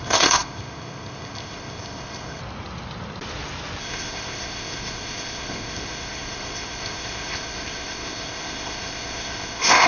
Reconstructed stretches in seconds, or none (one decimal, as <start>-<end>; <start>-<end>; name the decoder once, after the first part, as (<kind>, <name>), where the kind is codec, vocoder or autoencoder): 0.0-2.4 (codec, ZipCodec); 3.8-9.9